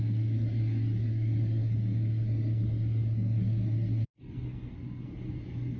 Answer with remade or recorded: remade